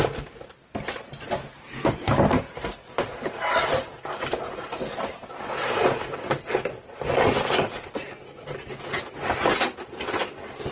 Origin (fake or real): real